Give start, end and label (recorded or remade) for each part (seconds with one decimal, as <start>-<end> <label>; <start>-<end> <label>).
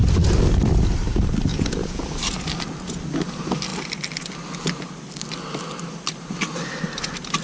0.0-1.5 recorded; 1.5-2.0 remade; 2.0-7.4 recorded